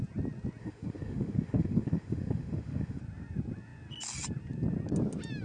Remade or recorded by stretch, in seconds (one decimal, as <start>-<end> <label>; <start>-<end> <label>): 0.0-0.6 recorded; 0.6-3.0 remade; 3.0-5.4 recorded